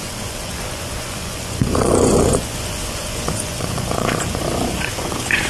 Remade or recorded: remade